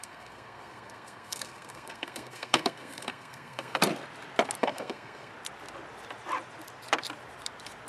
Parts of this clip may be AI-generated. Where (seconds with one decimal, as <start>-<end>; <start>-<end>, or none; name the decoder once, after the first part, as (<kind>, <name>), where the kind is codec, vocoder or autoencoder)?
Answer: 0.0-3.8 (codec, SNAC); 4.6-5.3